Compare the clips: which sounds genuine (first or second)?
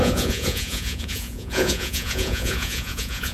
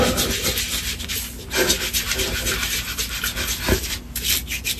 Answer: second